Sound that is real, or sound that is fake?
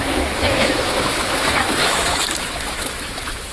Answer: fake